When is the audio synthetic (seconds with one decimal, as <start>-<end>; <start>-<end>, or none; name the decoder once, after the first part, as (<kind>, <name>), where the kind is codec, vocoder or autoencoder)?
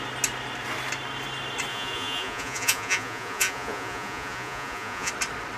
1.7-5.1 (vocoder, Vocos)